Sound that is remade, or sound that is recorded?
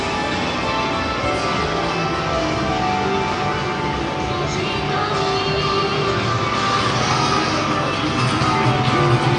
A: recorded